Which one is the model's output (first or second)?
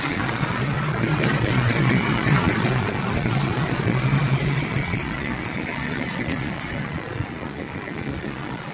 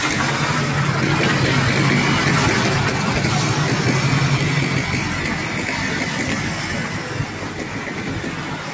first